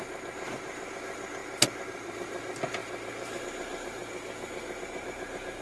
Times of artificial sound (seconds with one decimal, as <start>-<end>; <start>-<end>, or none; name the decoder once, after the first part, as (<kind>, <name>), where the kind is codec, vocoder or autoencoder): none